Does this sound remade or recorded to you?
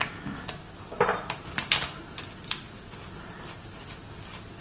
recorded